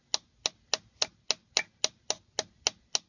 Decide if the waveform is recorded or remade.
recorded